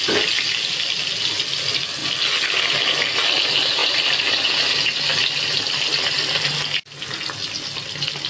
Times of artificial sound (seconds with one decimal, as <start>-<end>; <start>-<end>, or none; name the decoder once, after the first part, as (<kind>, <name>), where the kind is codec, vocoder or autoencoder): none